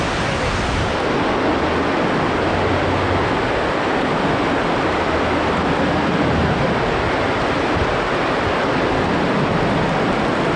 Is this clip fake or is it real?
real